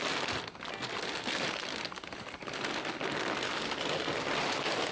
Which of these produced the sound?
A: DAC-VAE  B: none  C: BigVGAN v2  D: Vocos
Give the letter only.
B